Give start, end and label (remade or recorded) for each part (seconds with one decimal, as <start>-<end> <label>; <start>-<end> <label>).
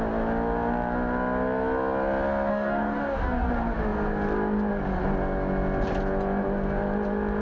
0.0-2.5 recorded; 2.5-3.5 remade; 3.5-7.4 recorded